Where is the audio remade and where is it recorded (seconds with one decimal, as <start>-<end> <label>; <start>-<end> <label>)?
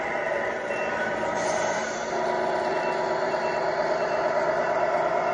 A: 0.0-5.3 recorded